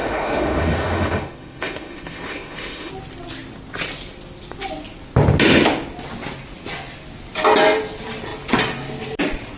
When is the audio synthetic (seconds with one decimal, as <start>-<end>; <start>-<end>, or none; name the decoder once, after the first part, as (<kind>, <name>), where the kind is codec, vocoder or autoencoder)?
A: 0.0-2.9 (autoencoder, DAC-VAE)